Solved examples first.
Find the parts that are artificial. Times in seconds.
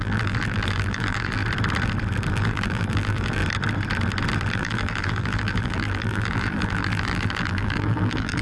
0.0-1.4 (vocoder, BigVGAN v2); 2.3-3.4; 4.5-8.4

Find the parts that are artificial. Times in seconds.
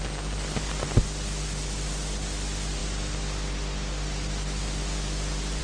none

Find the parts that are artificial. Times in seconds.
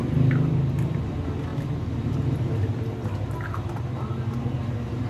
1.5-4.6 (vocoder, BigVGAN v2)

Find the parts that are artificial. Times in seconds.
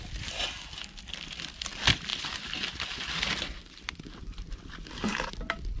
none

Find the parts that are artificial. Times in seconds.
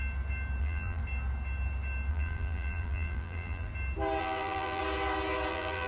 0.6-1.0 (vocoder, BigVGAN v2); 2.1-3.7; 4.2-4.8; 5.5-5.9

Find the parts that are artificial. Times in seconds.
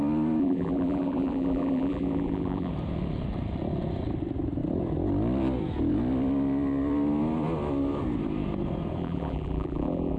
0.4-2.7 (vocoder, BigVGAN v2); 9.0-10.2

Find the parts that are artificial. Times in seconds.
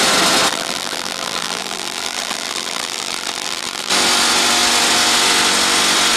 0.5-3.9 (vocoder, BigVGAN v2)